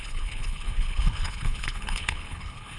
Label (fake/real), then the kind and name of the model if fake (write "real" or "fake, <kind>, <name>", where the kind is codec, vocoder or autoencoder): fake, codec, HILCodec